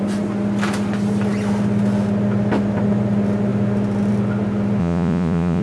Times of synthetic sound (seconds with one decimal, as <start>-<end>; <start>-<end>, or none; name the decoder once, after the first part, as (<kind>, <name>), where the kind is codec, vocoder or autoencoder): 4.8-5.6 (vocoder, Vocos)